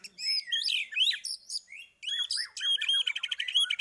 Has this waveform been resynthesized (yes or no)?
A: no